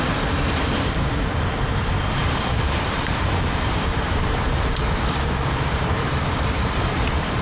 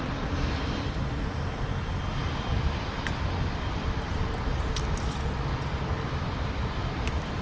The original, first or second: second